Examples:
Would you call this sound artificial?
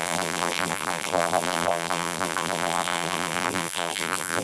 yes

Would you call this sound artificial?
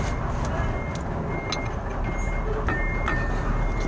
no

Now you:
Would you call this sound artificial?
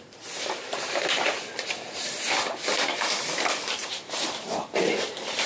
yes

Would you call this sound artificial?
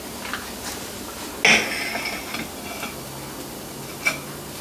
no